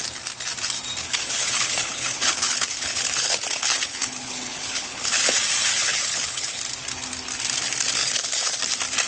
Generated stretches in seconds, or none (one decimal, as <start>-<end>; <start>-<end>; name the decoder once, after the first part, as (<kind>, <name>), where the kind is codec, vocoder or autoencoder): 1.0-5.2 (codec, HILCodec); 5.7-6.6; 8.0-8.6